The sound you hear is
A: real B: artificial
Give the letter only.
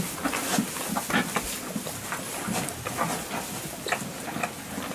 A